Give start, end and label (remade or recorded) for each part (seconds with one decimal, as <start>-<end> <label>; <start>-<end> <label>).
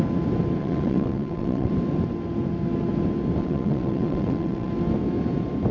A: 0.0-0.6 recorded; 0.6-1.7 remade; 1.7-3.4 recorded; 3.4-4.7 remade; 4.7-5.7 recorded